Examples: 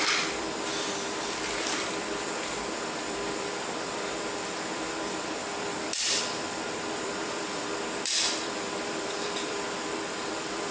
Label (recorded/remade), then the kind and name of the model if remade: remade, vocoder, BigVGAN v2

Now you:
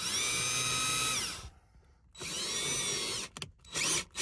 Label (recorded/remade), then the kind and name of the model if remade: recorded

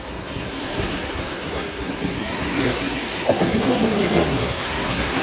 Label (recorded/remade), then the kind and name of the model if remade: remade, codec, SNAC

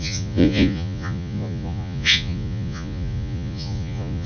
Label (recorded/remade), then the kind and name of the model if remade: remade, vocoder, Vocos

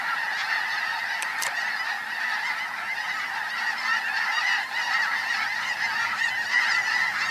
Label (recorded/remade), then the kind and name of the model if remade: recorded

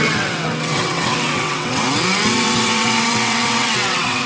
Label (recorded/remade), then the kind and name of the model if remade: remade, vocoder, WaveNeXt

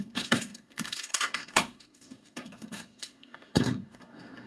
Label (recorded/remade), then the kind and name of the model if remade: remade, codec, SNAC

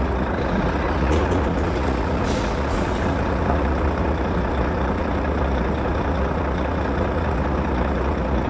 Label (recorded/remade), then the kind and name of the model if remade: remade, vocoder, Vocos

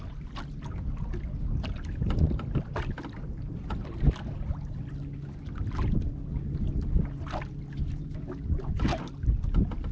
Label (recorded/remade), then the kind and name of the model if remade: recorded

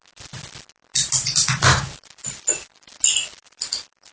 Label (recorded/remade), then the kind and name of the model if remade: recorded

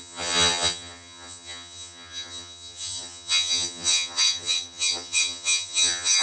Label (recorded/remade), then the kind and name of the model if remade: remade, vocoder, HiFi-GAN